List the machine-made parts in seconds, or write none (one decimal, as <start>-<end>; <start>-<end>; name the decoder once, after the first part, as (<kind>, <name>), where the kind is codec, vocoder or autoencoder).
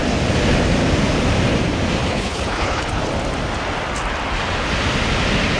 2.0-3.0 (codec, HILCodec)